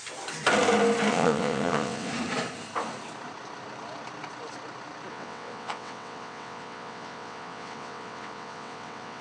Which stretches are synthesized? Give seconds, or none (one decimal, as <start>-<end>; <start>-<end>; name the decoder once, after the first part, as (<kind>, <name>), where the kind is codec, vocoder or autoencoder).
1.1-2.1 (vocoder, WaveNeXt); 5.1-9.2

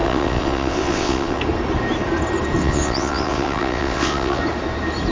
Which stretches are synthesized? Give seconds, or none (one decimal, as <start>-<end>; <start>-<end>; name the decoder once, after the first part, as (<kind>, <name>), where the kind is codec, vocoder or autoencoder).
0.0-1.4 (vocoder, WaveNeXt); 2.6-4.4

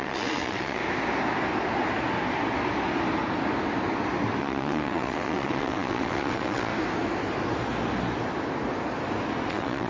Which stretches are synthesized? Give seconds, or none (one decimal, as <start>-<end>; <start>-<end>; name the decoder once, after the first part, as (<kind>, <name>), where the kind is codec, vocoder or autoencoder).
0.0-0.8 (vocoder, WaveNeXt); 4.4-6.7; 9.5-9.9

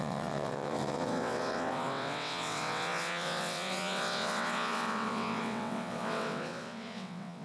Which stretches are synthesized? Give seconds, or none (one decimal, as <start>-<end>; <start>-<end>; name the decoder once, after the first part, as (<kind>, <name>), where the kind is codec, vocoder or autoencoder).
0.0-7.4 (vocoder, WaveNeXt)

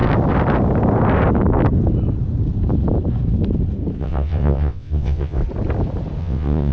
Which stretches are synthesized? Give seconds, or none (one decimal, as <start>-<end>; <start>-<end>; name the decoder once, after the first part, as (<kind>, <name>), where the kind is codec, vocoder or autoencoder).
4.0-5.4 (vocoder, WaveNeXt); 6.2-6.7

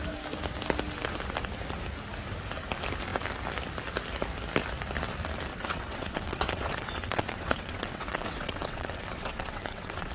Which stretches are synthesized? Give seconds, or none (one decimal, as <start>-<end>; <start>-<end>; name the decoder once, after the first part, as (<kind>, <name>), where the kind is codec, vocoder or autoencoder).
5.5-10.1 (vocoder, WaveNeXt)

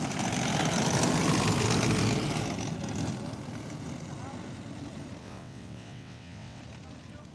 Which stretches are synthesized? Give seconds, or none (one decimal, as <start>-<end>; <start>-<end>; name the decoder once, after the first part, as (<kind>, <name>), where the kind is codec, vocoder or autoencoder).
5.2-6.6 (vocoder, WaveNeXt)